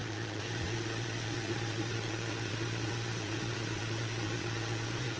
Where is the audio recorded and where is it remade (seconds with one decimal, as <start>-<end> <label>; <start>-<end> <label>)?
0.0-5.2 remade